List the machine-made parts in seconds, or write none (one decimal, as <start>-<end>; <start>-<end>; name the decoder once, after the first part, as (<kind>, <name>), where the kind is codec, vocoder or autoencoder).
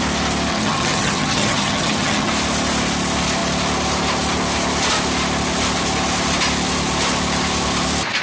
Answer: 0.5-2.3 (vocoder, HiFi-GAN)